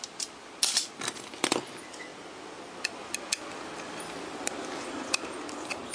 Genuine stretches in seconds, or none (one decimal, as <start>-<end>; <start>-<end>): 0.0-5.9